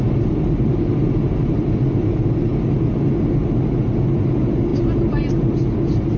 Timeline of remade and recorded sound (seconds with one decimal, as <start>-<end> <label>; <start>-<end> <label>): 0.0-4.7 recorded; 4.7-5.3 remade; 5.3-6.2 recorded